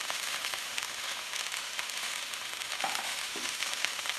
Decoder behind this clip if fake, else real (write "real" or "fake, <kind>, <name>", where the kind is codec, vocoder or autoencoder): fake, autoencoder, DAC-VAE